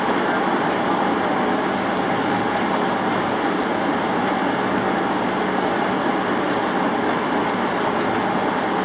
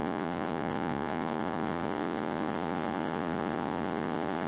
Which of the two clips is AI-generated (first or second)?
second